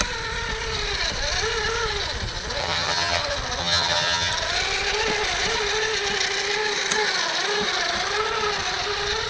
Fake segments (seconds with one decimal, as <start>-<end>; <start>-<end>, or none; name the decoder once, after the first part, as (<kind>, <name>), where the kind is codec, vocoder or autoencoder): 2.6-3.2 (vocoder, HiFi-GAN); 3.6-4.3